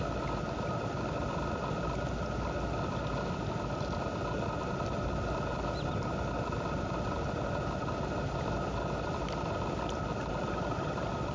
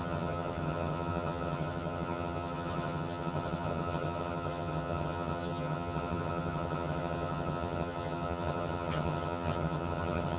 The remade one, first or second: second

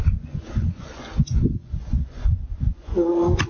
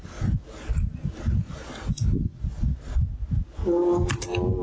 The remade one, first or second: first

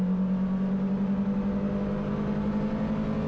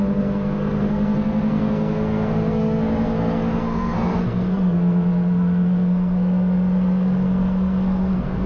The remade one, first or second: second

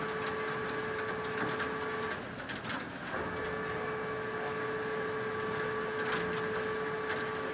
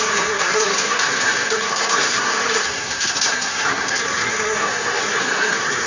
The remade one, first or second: second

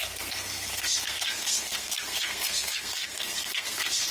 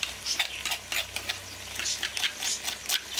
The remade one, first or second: first